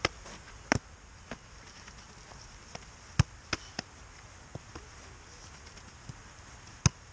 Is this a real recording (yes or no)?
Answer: yes